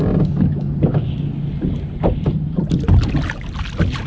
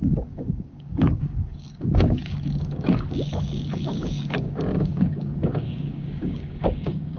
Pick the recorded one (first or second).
first